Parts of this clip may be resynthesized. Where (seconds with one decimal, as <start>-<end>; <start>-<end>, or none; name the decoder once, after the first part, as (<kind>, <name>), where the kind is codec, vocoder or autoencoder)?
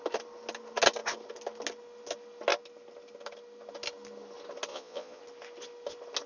4.7-5.2 (vocoder, Vocos)